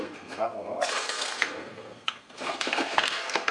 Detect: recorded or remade remade